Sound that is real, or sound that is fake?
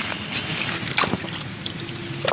real